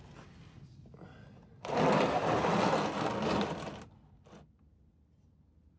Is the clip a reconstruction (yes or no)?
no